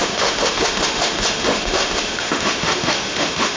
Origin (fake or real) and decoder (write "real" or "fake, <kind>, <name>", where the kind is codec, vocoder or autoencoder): fake, autoencoder, DAC-VAE